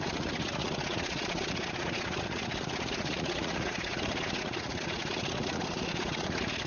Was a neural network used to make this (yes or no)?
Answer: yes